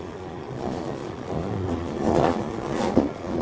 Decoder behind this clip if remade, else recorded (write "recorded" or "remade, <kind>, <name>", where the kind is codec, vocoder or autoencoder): remade, vocoder, Vocos